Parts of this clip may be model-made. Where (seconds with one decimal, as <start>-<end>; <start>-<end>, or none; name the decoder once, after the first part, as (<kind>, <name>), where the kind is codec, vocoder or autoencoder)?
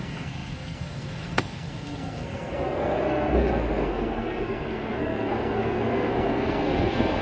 0.0-7.2 (codec, SNAC)